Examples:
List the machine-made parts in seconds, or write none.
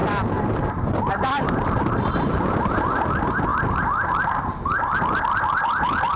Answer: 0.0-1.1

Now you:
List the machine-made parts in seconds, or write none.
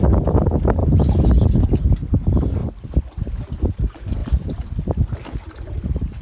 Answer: 0.8-1.6; 2.6-3.4; 4.2-5.0